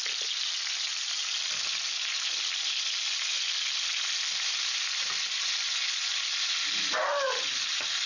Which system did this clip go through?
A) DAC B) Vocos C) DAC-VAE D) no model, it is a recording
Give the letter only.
D